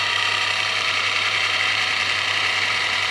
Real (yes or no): no